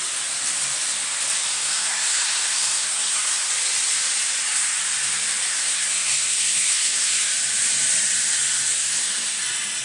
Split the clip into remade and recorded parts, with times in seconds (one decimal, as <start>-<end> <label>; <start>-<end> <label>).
0.0-1.5 recorded; 1.5-3.5 remade; 3.5-5.5 recorded; 5.5-7.3 remade; 7.3-8.7 recorded; 8.7-9.4 remade; 9.4-9.8 recorded